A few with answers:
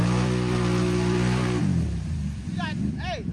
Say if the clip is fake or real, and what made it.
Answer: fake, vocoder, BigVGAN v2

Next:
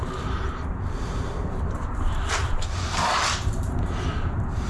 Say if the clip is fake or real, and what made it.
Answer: fake, vocoder, BigVGAN v2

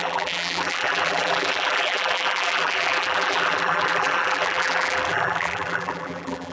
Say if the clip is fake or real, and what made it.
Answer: fake, vocoder, BigVGAN v2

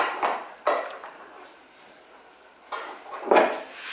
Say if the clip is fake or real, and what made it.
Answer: real